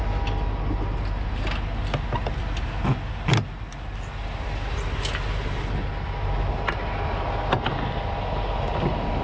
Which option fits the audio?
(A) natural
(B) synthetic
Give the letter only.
A